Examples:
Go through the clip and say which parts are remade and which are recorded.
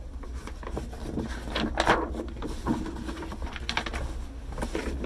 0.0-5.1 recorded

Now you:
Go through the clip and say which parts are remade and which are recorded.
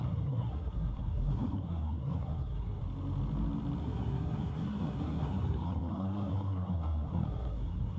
0.0-2.8 remade; 2.8-3.8 recorded; 3.8-8.0 remade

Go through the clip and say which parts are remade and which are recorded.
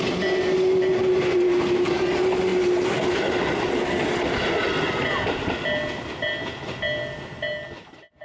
0.0-8.2 recorded